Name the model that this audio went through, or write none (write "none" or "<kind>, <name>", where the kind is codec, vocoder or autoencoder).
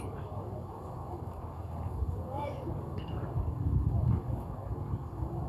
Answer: codec, DAC